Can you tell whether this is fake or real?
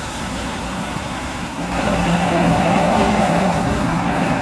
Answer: fake